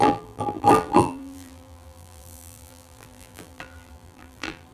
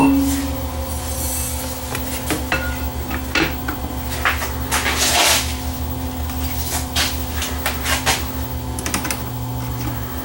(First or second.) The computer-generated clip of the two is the first